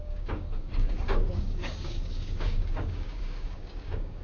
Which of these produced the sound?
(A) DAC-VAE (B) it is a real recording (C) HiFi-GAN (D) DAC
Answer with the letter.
D